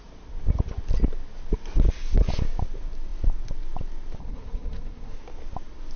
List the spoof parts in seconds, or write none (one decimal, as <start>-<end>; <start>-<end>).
4.2-5.1